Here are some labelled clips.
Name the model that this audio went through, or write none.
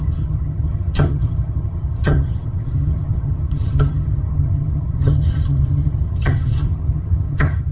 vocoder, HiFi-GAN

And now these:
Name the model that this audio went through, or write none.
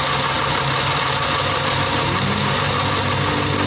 none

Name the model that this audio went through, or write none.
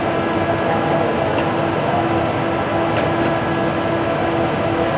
none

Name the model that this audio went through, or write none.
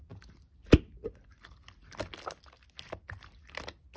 none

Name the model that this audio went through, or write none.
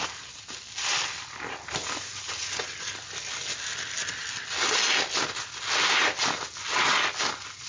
none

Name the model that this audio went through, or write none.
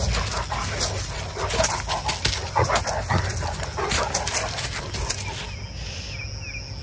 none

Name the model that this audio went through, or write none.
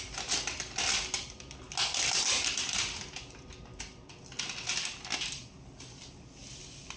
none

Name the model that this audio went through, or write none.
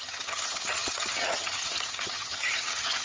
vocoder, HiFi-GAN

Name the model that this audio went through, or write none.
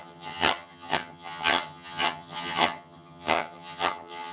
vocoder, HiFi-GAN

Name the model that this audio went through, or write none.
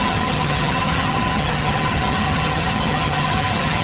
vocoder, HiFi-GAN